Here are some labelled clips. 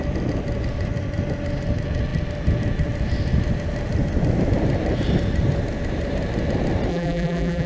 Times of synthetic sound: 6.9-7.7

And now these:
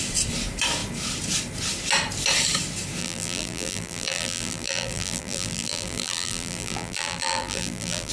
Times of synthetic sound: 3.0-8.1

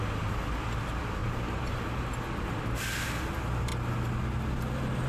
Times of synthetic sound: 0.0-1.2; 2.5-3.7; 4.5-5.1